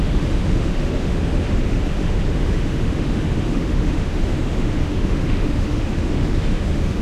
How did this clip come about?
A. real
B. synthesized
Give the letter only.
B